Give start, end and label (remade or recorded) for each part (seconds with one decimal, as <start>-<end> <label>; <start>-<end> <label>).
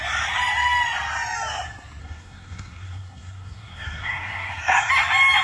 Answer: 0.0-2.0 recorded; 2.0-4.9 remade; 4.9-5.4 recorded